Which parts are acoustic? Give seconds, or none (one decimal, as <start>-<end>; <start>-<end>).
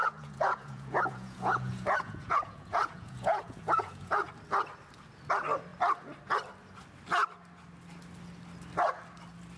4.3-9.6